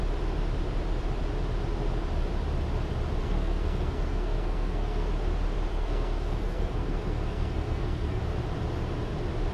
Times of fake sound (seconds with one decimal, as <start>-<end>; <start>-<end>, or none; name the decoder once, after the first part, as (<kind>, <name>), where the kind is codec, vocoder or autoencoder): 3.2-5.1 (codec, SNAC); 5.7-8.2